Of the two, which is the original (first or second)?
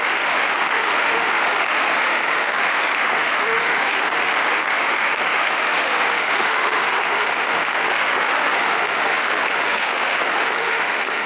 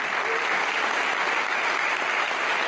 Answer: second